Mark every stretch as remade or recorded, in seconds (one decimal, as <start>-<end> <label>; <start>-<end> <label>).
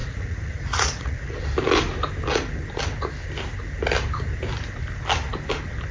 0.0-1.4 remade; 1.4-5.9 recorded